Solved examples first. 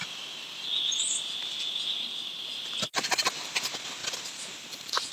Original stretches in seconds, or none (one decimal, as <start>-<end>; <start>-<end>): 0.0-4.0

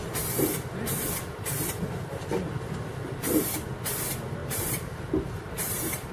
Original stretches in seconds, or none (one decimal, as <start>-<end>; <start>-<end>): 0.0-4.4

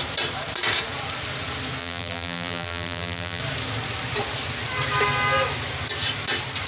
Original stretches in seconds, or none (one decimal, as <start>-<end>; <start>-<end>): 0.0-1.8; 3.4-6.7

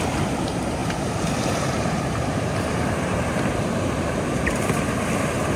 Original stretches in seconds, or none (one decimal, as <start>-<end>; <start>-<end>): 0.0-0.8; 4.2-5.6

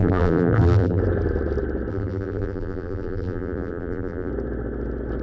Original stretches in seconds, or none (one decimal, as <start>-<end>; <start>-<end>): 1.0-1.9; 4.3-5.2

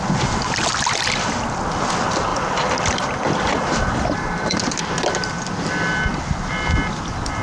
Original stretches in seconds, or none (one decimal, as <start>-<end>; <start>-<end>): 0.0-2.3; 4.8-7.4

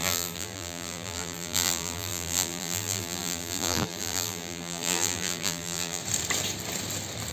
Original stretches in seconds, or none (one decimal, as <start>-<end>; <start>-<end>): 6.0-7.3